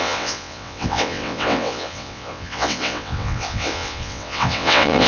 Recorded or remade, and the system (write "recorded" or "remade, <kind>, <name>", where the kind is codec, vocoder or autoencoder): remade, vocoder, WaveNeXt